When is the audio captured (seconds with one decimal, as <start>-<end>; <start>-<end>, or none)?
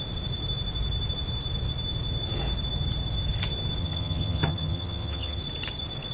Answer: 0.0-3.8; 5.4-6.1